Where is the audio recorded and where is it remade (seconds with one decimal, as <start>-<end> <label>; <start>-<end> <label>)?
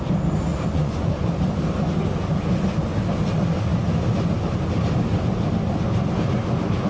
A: 0.0-0.5 recorded; 0.5-1.3 remade; 1.3-6.9 recorded